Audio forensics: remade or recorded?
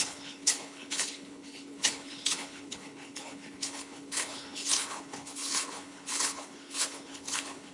remade